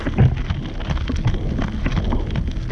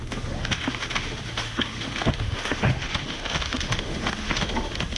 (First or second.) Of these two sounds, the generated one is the second